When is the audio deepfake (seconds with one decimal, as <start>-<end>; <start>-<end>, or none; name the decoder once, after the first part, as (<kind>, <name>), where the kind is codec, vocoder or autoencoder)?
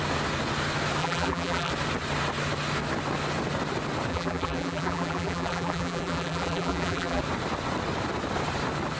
1.0-1.7 (vocoder, BigVGAN v2); 4.1-7.2